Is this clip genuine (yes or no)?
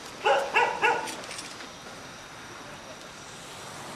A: yes